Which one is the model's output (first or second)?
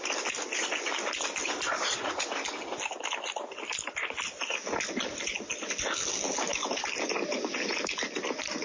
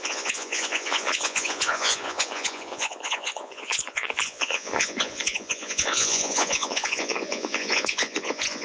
second